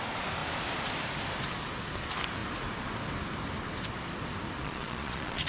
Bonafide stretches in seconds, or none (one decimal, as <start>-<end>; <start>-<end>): 0.0-4.6